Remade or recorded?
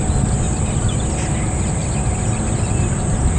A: recorded